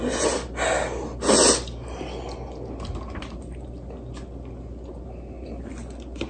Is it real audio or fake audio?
real